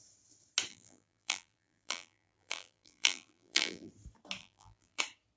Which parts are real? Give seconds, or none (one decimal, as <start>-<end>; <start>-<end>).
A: 0.0-0.7; 3.9-4.4; 5.0-5.4